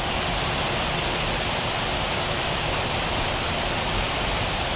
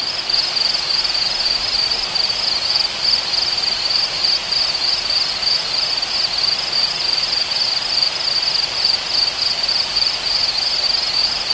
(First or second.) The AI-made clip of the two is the first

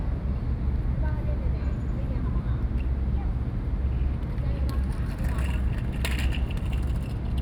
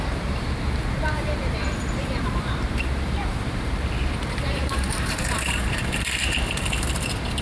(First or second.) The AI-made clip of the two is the second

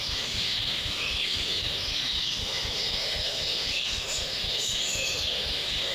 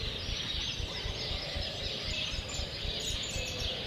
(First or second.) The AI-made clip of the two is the first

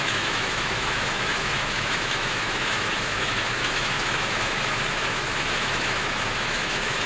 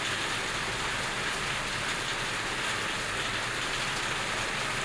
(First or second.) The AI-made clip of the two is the first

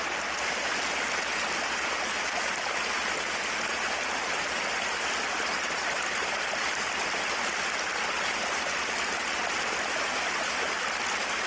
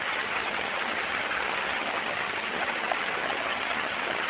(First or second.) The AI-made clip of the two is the second